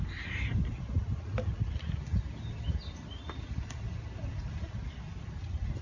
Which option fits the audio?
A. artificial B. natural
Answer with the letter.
B